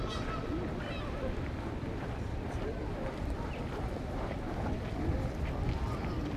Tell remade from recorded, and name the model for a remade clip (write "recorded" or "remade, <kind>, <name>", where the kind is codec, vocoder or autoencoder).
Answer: remade, vocoder, BigVGAN v2